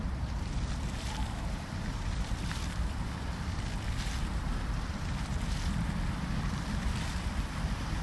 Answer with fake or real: fake